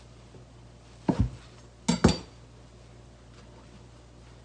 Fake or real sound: real